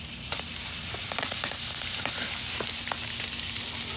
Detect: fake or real real